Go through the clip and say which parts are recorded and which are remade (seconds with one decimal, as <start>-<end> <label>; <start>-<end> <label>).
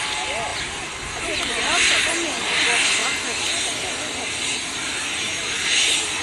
0.0-6.2 recorded